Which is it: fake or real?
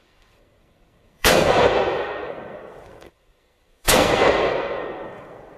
fake